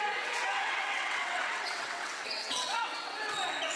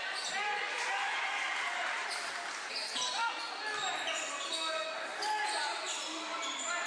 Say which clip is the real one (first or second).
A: second